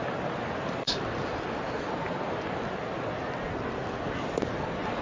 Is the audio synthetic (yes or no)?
no